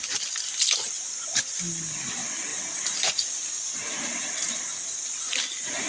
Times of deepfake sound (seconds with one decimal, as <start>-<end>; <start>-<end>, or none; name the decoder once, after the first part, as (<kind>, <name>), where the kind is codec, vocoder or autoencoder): none